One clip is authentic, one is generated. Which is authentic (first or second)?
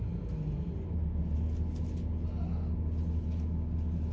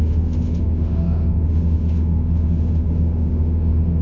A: first